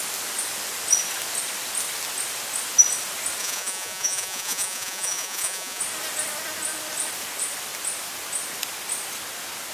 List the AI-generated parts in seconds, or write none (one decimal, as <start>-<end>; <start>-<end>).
3.4-5.8